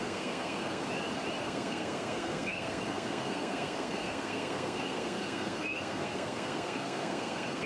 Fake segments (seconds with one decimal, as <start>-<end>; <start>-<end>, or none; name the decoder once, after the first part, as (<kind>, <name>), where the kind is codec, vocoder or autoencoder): 0.0-0.8 (codec, SNAC); 1.4-7.7